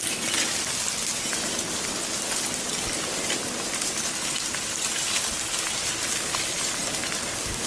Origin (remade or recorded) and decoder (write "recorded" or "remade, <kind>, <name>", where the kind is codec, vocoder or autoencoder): recorded